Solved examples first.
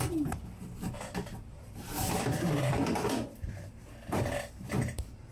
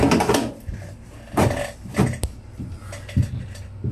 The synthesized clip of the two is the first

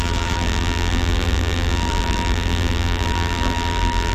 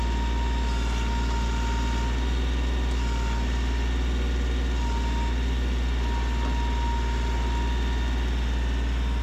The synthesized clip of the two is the first